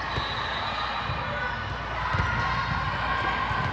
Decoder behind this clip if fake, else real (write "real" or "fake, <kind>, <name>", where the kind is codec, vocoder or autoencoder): real